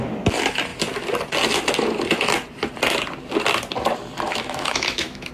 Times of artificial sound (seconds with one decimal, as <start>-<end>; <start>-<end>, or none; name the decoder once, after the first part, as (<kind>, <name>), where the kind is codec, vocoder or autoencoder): 4.3-5.3 (autoencoder, DAC-VAE)